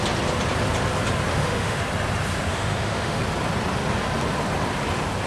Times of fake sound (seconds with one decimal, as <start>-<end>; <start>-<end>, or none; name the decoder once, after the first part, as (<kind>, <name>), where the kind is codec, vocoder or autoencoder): 1.3-1.8 (autoencoder, DAC-VAE); 2.5-3.2